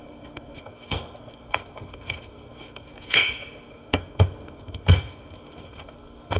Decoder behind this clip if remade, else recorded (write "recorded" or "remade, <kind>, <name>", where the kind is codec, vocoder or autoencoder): remade, codec, SNAC